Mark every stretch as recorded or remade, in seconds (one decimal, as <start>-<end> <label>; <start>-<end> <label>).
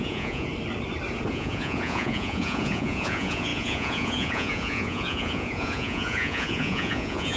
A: 0.0-0.5 remade; 0.5-1.3 recorded; 1.3-7.4 remade